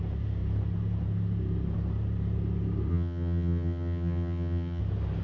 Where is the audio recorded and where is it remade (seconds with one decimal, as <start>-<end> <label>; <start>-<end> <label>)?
0.0-2.9 recorded; 2.9-4.8 remade; 4.8-5.2 recorded